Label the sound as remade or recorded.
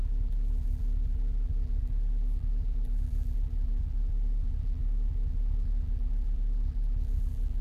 remade